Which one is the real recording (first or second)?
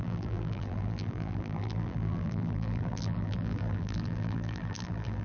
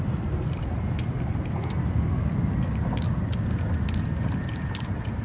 second